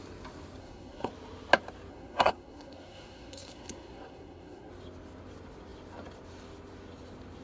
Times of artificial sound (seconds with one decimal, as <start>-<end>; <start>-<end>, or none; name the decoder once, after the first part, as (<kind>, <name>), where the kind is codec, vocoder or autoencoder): 0.6-1.1 (codec, SNAC); 1.9-4.7